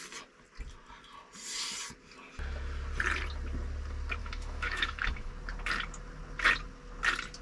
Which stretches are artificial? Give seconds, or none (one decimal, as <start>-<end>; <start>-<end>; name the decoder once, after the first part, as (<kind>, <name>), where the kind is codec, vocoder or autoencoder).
4.2-5.3 (autoencoder, DAC-VAE)

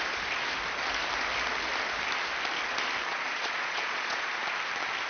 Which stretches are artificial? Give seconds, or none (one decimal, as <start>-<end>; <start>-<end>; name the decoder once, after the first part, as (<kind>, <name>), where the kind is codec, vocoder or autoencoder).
3.1-4.3 (vocoder, Vocos)